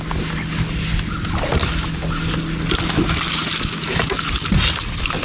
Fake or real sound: real